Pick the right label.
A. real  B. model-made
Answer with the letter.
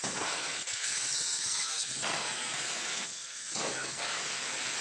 B